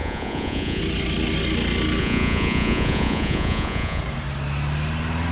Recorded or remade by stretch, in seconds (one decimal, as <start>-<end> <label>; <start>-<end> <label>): 0.0-0.8 remade; 0.8-2.0 recorded; 2.0-4.0 remade; 4.0-5.3 recorded